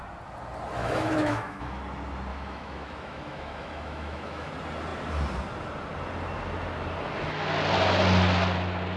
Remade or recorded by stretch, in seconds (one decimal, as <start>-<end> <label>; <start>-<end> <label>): 0.0-0.8 recorded; 0.8-1.8 remade; 1.8-2.3 recorded; 2.3-4.5 remade; 4.5-9.0 recorded